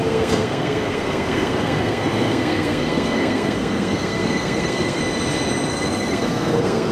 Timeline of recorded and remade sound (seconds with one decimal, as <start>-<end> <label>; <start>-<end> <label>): 0.0-5.0 remade; 5.0-5.7 recorded; 5.7-6.9 remade